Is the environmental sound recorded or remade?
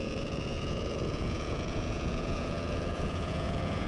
remade